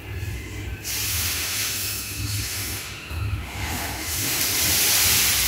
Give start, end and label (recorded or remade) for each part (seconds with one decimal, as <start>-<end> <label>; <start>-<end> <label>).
0.0-1.1 recorded; 1.1-4.4 remade; 4.4-5.5 recorded